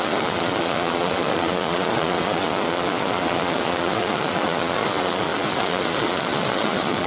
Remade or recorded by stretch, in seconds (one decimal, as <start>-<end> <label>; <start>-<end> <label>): 0.0-7.1 remade